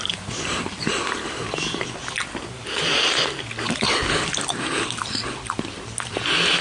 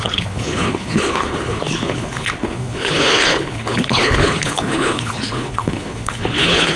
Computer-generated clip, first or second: second